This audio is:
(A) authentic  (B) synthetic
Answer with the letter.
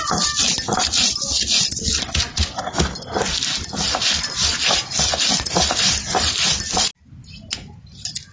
A